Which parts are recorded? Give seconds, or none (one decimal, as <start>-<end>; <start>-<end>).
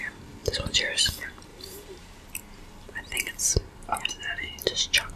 0.0-1.5; 4.6-5.2